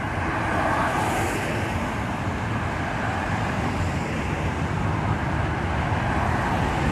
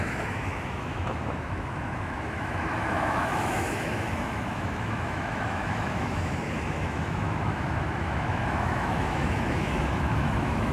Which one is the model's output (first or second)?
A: second